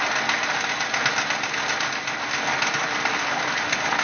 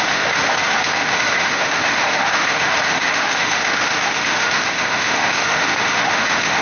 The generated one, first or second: second